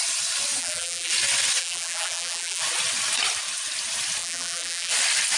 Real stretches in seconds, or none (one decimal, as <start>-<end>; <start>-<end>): 0.0-0.6; 1.1-1.6; 2.6-4.2; 4.9-5.4